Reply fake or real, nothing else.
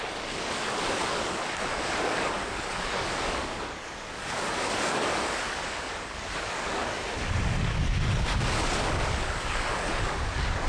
fake